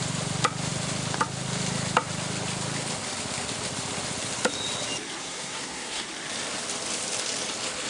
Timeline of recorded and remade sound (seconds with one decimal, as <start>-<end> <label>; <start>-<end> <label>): 0.0-5.2 recorded; 5.2-6.0 remade; 6.0-7.9 recorded

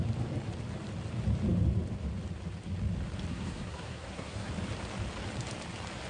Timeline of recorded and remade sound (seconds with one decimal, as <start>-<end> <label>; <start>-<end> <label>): 0.0-3.3 recorded; 3.3-4.5 remade; 4.5-6.1 recorded

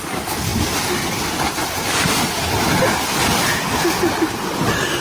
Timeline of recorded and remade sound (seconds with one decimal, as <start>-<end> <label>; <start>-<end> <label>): 0.0-5.0 recorded

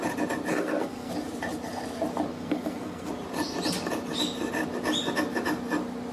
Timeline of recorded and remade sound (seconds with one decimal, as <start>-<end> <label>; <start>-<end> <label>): 0.0-0.5 recorded; 0.5-1.1 remade; 1.1-2.3 recorded; 2.3-3.1 remade; 3.1-6.1 recorded

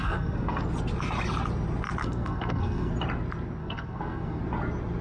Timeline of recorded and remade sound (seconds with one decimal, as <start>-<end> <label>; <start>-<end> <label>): 0.0-0.6 remade; 0.6-2.0 recorded; 2.0-2.9 remade; 2.9-3.6 recorded; 3.6-4.4 remade; 4.4-5.0 recorded

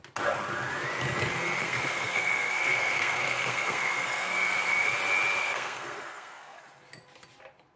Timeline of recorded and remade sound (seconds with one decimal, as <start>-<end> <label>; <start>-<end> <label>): 0.0-1.6 recorded; 1.6-4.9 remade; 4.9-5.4 recorded; 5.4-6.6 remade; 6.6-7.8 recorded

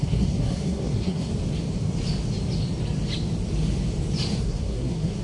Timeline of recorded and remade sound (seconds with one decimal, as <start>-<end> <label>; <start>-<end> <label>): 0.0-1.3 remade; 1.3-4.4 recorded; 4.4-5.2 remade